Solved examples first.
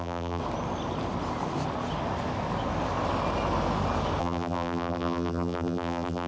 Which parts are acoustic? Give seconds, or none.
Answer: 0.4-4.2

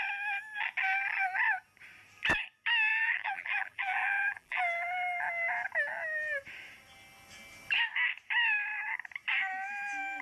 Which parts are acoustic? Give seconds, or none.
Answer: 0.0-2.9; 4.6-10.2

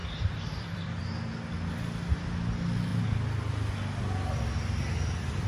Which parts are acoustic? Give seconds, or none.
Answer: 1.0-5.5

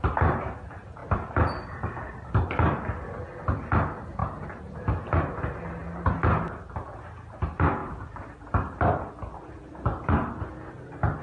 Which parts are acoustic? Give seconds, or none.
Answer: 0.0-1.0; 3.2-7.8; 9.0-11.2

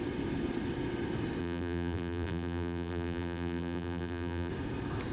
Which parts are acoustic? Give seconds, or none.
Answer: 0.0-1.4; 4.5-5.1